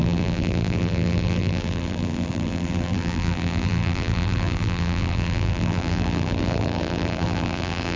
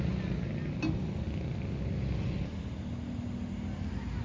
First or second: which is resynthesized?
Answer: first